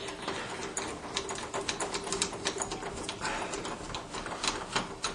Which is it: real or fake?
real